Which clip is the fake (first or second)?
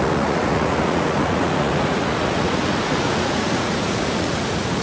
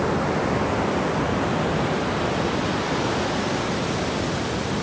first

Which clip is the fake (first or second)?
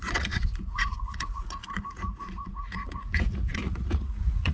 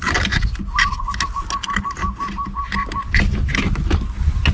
first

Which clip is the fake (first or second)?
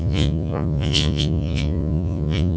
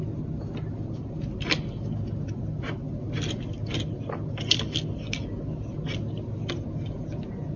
first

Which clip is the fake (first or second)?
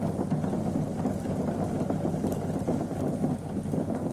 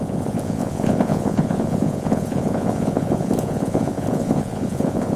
second